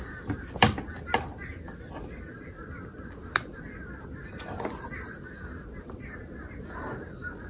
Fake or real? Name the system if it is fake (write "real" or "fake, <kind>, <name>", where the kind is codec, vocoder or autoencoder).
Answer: real